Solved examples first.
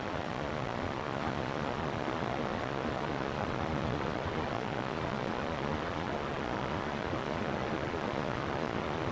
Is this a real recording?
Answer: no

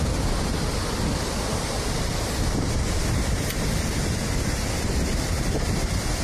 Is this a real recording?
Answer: yes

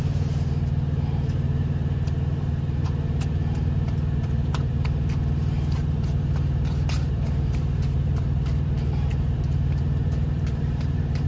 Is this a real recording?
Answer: no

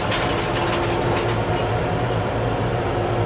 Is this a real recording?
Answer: yes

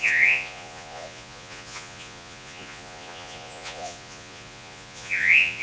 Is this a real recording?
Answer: no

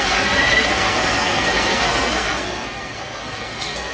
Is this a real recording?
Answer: no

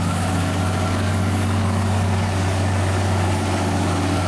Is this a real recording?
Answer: no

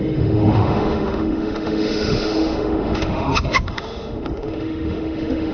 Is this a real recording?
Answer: no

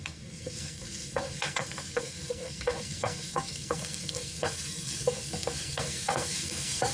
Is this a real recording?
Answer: no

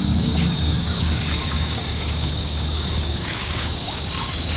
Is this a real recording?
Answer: no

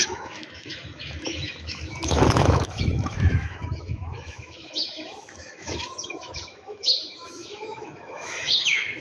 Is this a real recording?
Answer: no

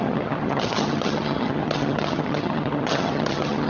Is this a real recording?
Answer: no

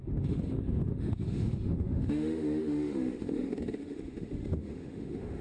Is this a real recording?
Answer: no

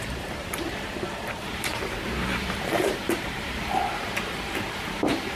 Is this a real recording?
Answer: no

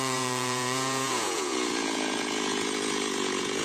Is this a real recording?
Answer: no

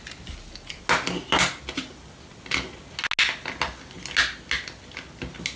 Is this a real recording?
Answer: yes